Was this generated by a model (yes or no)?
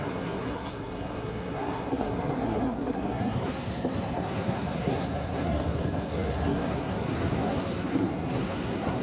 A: yes